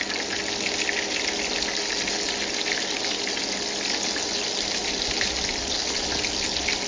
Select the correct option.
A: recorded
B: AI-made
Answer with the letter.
A